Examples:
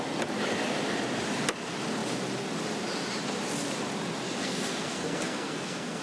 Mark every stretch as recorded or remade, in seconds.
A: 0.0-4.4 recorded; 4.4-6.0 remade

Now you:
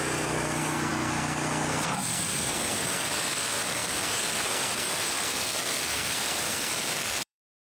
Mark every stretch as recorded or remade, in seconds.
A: 0.0-7.6 remade